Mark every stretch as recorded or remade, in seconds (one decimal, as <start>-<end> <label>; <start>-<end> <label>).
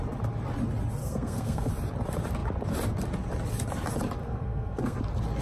0.0-1.0 recorded; 1.0-1.7 remade; 1.7-4.2 recorded; 4.2-5.0 remade; 5.0-5.4 recorded